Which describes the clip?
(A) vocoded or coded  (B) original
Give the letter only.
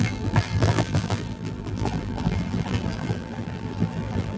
A